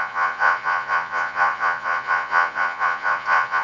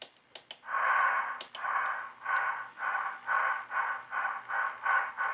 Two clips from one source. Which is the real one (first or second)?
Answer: second